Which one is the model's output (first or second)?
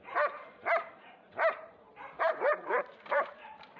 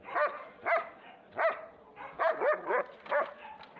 first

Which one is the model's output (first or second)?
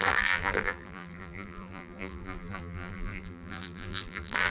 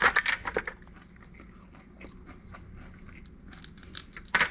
first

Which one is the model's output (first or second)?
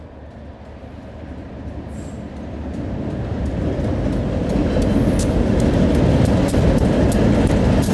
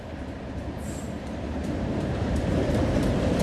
second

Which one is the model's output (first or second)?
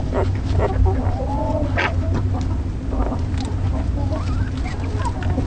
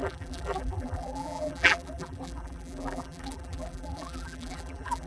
second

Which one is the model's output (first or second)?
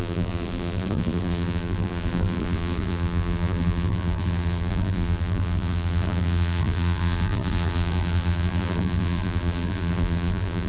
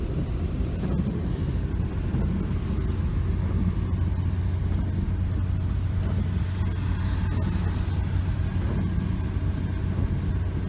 first